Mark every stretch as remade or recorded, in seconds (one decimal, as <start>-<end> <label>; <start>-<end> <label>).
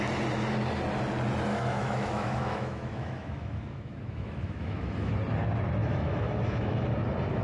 0.0-1.5 recorded; 1.5-5.1 remade; 5.1-5.8 recorded; 5.8-6.8 remade; 6.8-7.4 recorded